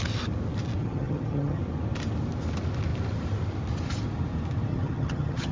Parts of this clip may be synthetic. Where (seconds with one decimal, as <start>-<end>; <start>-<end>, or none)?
0.8-1.6; 4.7-5.5